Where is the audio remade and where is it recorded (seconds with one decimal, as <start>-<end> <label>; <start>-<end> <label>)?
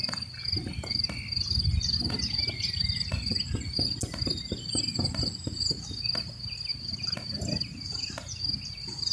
0.0-9.1 recorded